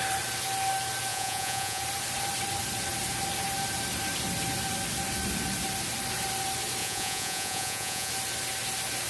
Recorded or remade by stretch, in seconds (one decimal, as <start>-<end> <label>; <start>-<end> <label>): 0.0-1.1 recorded; 1.1-1.8 remade; 1.8-6.8 recorded; 6.8-8.1 remade; 8.1-9.1 recorded